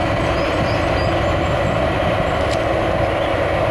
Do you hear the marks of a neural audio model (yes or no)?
no